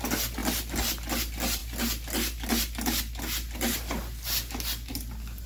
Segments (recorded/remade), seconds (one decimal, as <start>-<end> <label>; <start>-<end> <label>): 0.0-5.5 recorded